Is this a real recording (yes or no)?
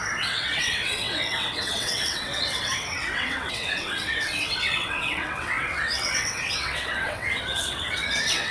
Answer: no